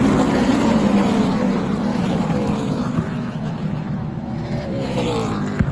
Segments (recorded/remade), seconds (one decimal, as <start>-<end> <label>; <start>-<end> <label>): 0.0-1.9 recorded; 1.9-5.3 remade; 5.3-5.7 recorded